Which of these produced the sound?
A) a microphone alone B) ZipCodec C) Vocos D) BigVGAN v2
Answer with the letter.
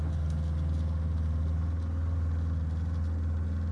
A